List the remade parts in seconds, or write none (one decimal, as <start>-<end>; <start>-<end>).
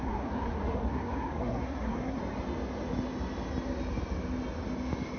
0.0-2.2